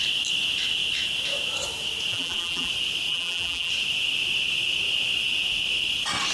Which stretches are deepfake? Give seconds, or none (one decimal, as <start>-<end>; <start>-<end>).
2.1-2.7; 3.1-3.7